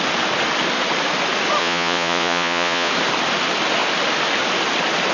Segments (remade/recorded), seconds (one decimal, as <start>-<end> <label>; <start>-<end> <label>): 0.0-1.6 recorded; 1.6-2.9 remade; 2.9-5.1 recorded